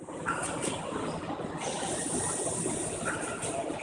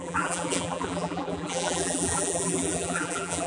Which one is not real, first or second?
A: second